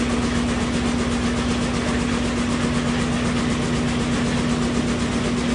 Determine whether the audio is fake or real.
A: real